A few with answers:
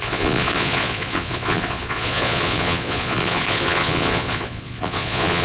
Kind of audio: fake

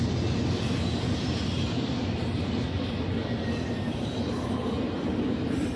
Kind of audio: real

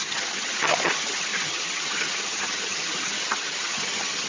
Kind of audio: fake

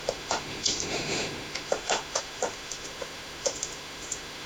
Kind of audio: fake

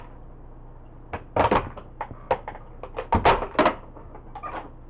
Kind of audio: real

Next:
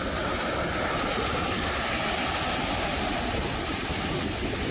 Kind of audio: real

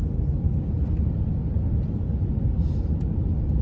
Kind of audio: real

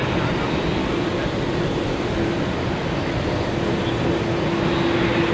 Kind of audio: real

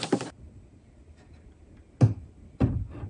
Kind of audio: real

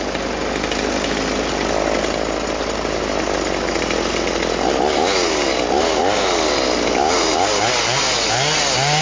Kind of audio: real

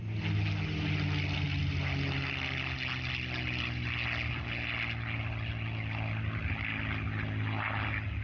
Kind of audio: real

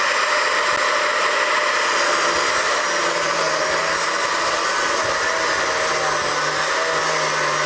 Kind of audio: real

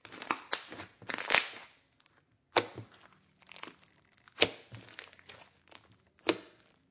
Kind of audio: real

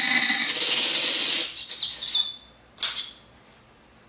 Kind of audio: real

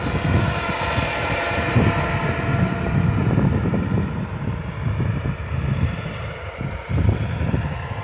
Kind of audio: fake